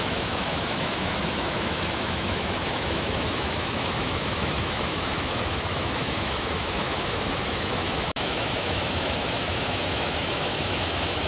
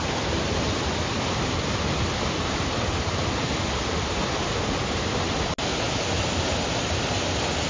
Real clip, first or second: second